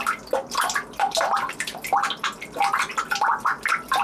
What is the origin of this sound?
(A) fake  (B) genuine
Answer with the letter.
A